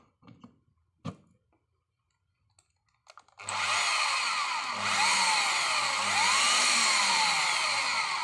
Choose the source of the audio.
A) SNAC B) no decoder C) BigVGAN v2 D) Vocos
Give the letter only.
B